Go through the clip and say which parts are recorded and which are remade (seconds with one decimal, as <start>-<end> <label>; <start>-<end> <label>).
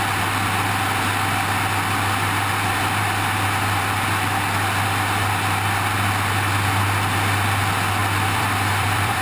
0.0-8.0 recorded; 8.0-9.2 remade